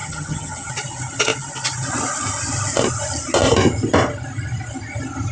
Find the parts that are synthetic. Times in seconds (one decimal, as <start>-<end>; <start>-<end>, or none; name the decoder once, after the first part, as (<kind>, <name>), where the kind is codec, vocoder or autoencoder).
0.0-0.7 (vocoder, HiFi-GAN)